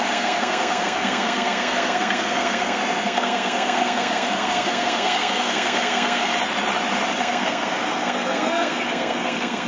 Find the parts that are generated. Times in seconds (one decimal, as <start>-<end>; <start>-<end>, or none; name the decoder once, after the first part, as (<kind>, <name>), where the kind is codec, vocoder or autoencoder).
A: 0.0-6.3 (codec, SNAC); 7.2-9.7